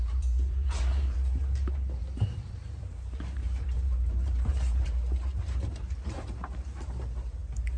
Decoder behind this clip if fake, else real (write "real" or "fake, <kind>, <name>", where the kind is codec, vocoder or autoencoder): fake, vocoder, BigVGAN v2